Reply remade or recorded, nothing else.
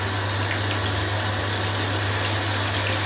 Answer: recorded